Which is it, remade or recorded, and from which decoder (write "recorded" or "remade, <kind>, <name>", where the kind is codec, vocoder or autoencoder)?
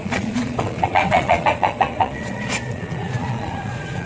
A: remade, vocoder, Vocos